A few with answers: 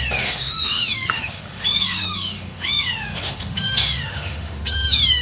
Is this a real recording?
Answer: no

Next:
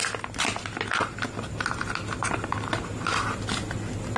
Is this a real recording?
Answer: yes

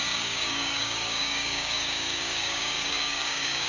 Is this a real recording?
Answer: no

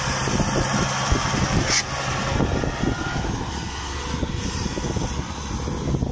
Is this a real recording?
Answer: yes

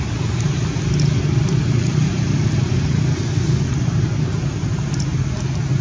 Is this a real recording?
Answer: yes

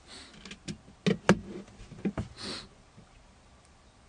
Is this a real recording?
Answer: yes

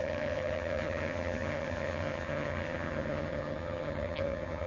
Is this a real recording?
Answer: no